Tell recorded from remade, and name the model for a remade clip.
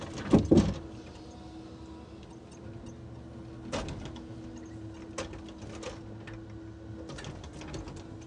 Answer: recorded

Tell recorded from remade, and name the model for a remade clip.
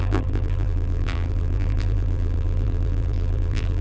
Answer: remade, vocoder, BigVGAN v2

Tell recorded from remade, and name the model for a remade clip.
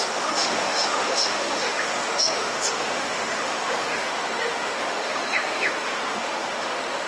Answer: remade, autoencoder, DAC-VAE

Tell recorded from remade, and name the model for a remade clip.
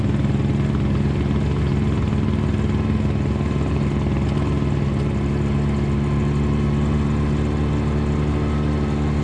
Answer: recorded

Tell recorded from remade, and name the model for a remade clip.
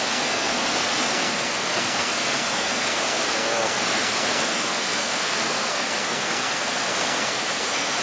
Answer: remade, codec, SNAC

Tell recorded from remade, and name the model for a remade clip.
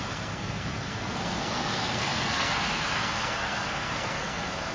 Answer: remade, codec, SNAC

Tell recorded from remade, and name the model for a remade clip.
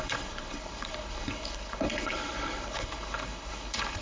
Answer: remade, codec, HILCodec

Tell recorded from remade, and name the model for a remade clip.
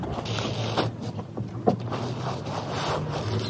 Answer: recorded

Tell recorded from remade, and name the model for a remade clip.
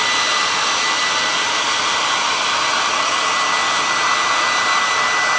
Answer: recorded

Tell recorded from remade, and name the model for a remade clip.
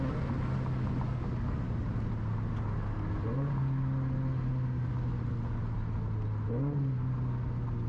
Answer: recorded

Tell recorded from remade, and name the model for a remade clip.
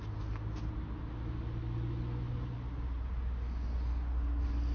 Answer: recorded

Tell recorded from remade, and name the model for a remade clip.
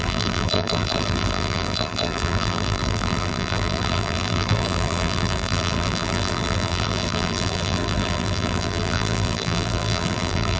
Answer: remade, vocoder, BigVGAN v2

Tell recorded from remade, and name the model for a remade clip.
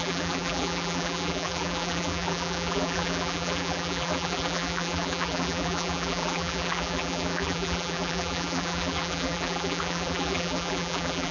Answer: remade, vocoder, BigVGAN v2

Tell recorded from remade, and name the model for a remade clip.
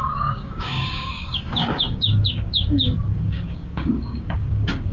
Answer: remade, codec, DAC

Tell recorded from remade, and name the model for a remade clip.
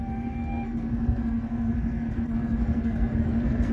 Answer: remade, codec, SNAC